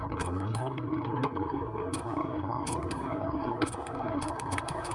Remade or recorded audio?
remade